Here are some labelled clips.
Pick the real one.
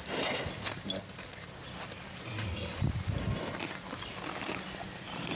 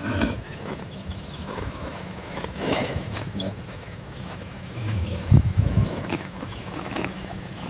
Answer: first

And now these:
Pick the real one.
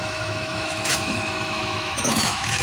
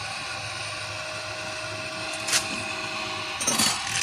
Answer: second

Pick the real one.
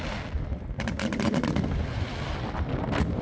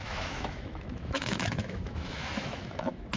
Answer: first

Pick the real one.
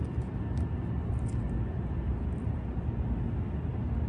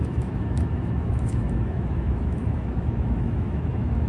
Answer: first